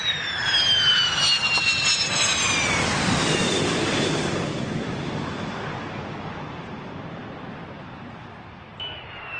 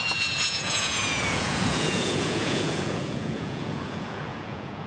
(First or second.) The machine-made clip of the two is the second